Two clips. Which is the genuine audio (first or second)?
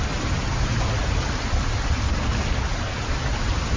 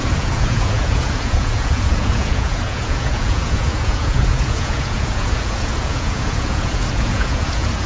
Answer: first